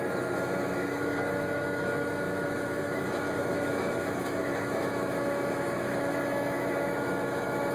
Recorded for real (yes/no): no